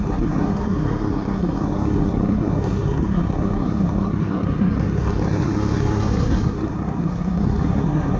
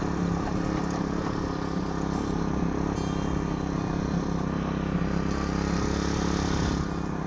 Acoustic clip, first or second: second